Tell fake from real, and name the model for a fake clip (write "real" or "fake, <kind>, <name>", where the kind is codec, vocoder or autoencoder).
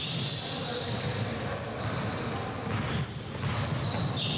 real